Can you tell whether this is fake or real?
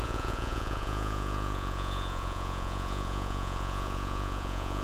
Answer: fake